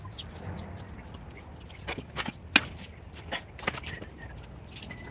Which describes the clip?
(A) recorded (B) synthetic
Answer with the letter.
A